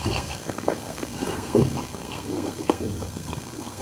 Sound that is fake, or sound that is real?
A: fake